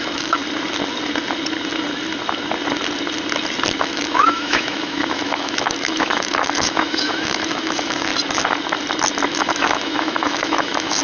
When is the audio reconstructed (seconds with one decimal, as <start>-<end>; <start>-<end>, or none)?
0.0-0.4; 3.8-8.1; 9.3-11.0